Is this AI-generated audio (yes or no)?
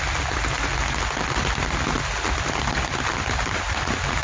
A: no